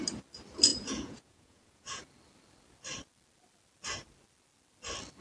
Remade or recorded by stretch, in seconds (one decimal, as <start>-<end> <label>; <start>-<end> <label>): 0.0-0.7 recorded; 0.7-2.0 remade; 2.0-5.2 recorded

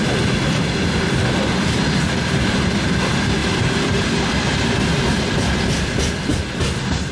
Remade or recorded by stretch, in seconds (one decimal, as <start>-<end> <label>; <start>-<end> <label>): 0.0-6.3 remade; 6.3-7.1 recorded

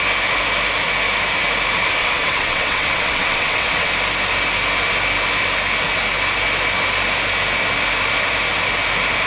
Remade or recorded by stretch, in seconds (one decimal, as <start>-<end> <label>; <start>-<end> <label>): 0.0-2.0 recorded; 2.0-3.9 remade; 3.9-9.3 recorded

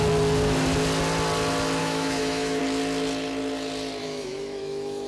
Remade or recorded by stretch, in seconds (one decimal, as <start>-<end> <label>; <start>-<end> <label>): 0.0-1.8 recorded; 1.8-2.6 remade; 2.6-4.0 recorded; 4.0-5.1 remade

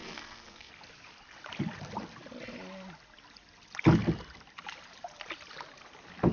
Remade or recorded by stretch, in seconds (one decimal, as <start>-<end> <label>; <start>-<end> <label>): 0.0-0.7 remade; 0.7-6.3 recorded

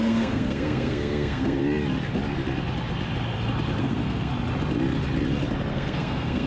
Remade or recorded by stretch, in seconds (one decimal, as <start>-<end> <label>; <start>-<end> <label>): 0.0-1.6 remade; 1.6-3.8 recorded; 3.8-4.3 remade; 4.3-5.7 recorded; 5.7-6.5 remade